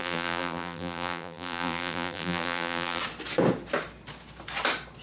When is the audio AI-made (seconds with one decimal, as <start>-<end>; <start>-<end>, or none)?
0.0-3.0